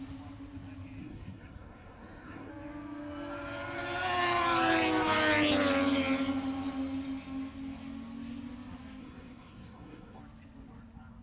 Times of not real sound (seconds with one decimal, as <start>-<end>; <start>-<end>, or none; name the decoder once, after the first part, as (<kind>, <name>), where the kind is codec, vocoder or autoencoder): 1.0-2.5 (codec, SNAC); 9.0-10.2